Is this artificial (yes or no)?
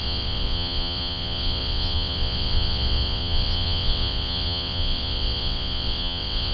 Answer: yes